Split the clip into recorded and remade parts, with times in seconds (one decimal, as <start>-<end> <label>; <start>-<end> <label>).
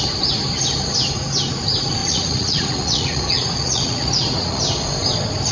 0.0-2.0 recorded; 2.0-4.6 remade; 4.6-5.5 recorded